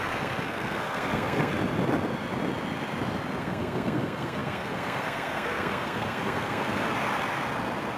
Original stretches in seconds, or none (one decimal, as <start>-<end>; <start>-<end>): 1.5-3.4; 6.9-8.0